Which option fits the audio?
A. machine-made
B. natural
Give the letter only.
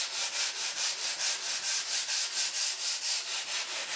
B